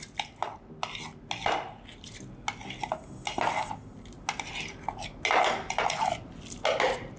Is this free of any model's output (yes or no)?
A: yes